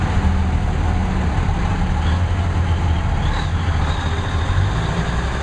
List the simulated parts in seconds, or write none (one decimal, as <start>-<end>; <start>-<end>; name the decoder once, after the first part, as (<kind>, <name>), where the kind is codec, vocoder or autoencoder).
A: none